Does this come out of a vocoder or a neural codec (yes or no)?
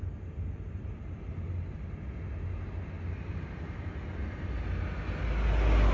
no